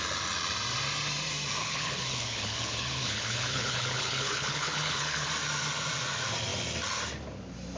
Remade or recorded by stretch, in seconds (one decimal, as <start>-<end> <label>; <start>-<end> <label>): 0.0-1.6 recorded; 1.6-5.3 remade; 5.3-7.8 recorded